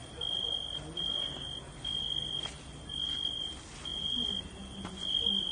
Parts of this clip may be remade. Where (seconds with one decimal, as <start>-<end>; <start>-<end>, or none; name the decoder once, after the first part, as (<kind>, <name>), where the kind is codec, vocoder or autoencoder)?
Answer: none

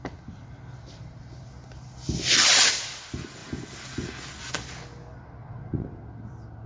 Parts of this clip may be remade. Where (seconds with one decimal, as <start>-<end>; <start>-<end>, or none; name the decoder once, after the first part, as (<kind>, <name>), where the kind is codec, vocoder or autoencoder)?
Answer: 5.4-6.0 (vocoder, WaveNeXt)

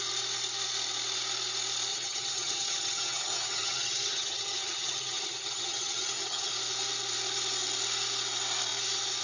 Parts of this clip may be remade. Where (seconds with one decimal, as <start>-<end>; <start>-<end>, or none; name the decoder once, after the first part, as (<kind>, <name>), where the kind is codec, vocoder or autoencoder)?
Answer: 1.9-6.5 (vocoder, HiFi-GAN)

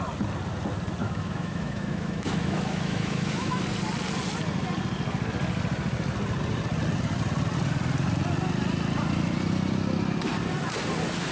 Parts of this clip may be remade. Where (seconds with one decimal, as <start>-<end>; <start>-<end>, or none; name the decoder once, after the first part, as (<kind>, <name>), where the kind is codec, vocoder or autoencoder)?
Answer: 1.0-3.6 (autoencoder, DAC-VAE)